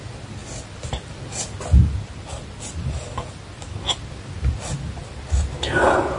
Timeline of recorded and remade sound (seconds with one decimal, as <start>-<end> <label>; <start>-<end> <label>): 0.0-6.2 recorded